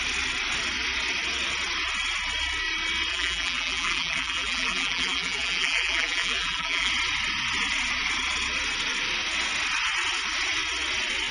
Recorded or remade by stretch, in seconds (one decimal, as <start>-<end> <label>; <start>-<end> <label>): 0.0-3.1 recorded; 3.1-6.9 remade; 6.9-11.3 recorded